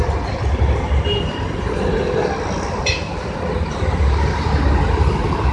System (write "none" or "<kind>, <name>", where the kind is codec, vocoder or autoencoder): none